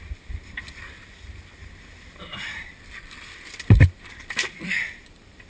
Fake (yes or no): yes